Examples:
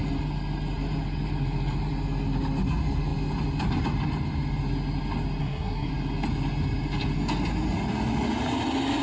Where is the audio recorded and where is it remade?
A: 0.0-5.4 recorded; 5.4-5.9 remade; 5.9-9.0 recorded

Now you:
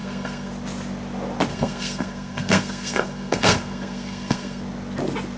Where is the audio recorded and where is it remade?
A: 0.0-0.5 remade; 0.5-1.5 recorded; 1.5-4.6 remade; 4.6-5.4 recorded